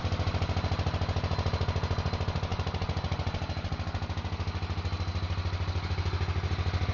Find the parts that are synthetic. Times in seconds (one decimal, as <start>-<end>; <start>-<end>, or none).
none

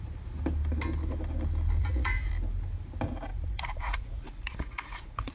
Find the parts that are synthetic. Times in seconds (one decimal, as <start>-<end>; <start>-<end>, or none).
1.8-2.3; 3.3-5.3